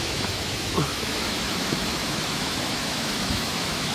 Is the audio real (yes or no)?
no